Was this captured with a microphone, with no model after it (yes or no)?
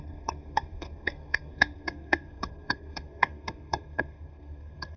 no